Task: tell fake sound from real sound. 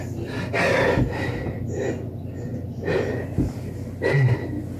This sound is real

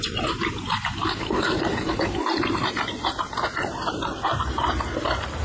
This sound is fake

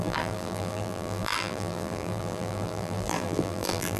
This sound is fake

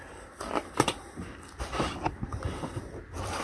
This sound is real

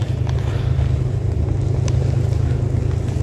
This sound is real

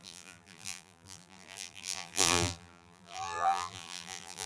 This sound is fake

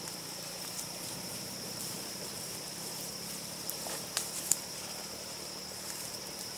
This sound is fake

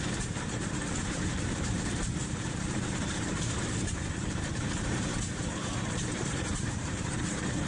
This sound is fake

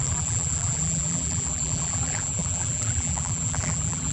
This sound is fake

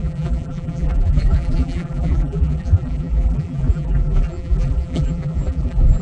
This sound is fake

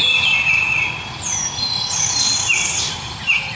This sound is fake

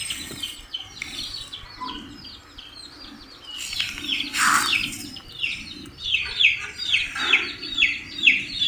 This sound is fake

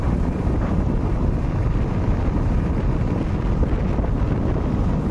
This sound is real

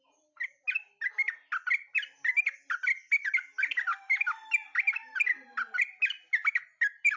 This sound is real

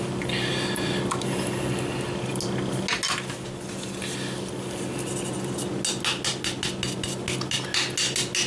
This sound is real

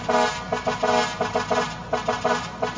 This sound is real